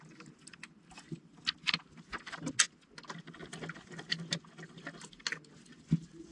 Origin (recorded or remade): recorded